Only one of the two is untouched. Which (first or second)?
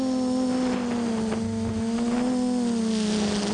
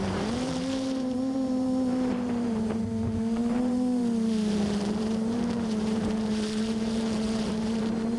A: first